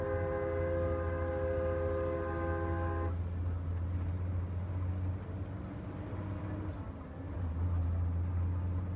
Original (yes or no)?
yes